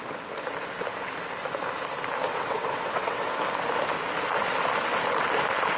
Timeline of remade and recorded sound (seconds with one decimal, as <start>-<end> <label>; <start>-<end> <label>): 0.0-2.3 recorded; 2.3-3.3 remade; 3.3-5.8 recorded